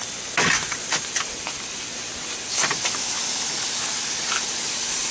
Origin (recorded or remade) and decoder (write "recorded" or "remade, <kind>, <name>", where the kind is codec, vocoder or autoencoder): recorded